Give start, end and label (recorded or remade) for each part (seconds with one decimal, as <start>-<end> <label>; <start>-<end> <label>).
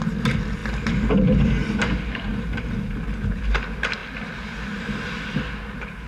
0.0-6.1 recorded